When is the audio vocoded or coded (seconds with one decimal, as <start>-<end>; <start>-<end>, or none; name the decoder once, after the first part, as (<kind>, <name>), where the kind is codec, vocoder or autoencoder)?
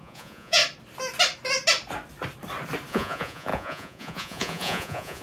0.0-0.6 (vocoder, Vocos); 2.9-5.2